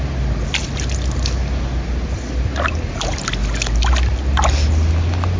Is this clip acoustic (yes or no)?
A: yes